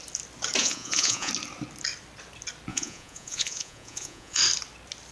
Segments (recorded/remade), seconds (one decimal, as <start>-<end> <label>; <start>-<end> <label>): 0.0-0.6 recorded; 0.6-1.3 remade; 1.3-2.7 recorded; 2.7-4.4 remade; 4.4-5.1 recorded